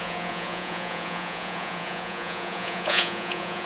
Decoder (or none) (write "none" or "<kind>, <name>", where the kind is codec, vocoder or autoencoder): vocoder, Vocos